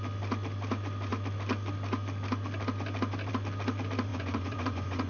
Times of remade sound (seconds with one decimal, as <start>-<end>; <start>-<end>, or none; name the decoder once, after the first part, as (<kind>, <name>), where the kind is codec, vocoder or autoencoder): 4.1-5.1 (vocoder, Vocos)